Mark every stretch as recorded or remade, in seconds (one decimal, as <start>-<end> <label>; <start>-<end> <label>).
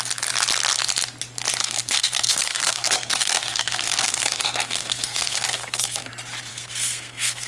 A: 0.0-1.6 recorded; 1.6-6.1 remade; 6.1-6.5 recorded; 6.5-7.5 remade